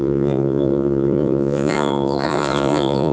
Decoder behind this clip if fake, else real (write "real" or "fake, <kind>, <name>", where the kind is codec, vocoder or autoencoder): fake, vocoder, Vocos